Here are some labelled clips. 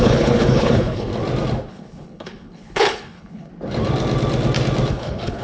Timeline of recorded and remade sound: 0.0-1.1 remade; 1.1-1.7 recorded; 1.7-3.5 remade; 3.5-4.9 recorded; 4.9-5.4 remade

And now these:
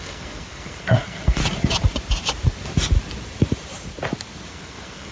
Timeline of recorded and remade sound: 0.0-1.4 remade; 1.4-4.5 recorded; 4.5-5.1 remade